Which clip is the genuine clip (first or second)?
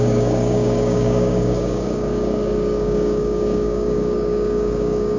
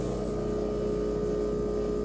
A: second